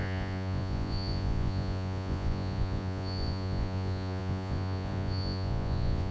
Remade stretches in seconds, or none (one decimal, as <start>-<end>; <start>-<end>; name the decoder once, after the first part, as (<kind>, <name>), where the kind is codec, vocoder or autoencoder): 0.0-6.1 (vocoder, Vocos)

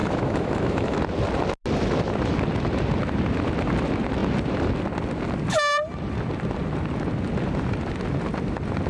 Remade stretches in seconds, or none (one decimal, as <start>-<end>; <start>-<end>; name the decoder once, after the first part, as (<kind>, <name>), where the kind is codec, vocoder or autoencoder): 0.0-1.0 (autoencoder, DAC-VAE)

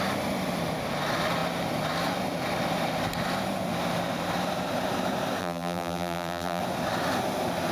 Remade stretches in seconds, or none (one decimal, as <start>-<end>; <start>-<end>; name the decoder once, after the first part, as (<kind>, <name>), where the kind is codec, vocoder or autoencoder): 5.4-6.6 (vocoder, BigVGAN v2)

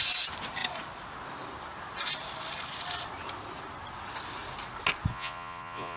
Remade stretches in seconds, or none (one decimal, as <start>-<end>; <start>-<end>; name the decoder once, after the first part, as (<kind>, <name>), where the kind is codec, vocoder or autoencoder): 5.1-6.0 (vocoder, Vocos)

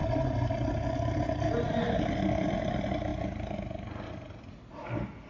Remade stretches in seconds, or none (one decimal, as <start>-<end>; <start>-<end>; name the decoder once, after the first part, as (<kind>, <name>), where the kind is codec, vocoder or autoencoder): none

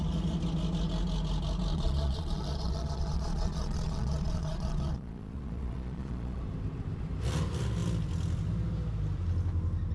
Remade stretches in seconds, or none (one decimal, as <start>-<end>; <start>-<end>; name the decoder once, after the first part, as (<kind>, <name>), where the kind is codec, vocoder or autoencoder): 1.7-6.4 (vocoder, Vocos)

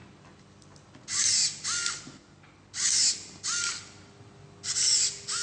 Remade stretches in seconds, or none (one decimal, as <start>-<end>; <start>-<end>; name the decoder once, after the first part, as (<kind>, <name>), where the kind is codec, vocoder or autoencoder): none